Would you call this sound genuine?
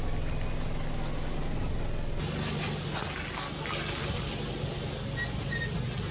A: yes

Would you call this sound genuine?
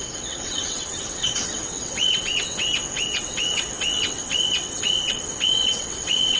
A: no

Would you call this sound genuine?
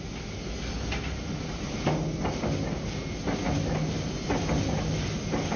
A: yes